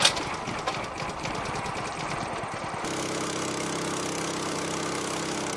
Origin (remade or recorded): recorded